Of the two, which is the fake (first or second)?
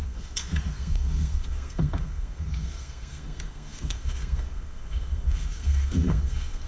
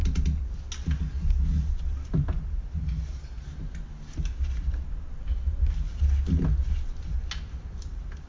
first